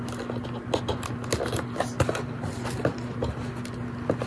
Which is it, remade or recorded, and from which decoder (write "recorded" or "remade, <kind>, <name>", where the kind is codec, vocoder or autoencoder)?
recorded